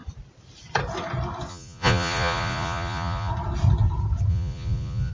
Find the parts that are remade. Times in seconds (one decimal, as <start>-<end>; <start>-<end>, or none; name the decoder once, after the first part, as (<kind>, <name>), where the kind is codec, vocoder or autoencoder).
1.5-3.3 (vocoder, Vocos); 4.3-5.1